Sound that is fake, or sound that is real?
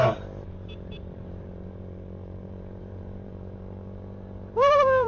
fake